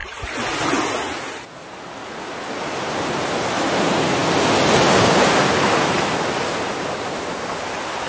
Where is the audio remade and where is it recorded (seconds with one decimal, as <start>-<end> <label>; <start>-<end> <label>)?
0.0-8.1 recorded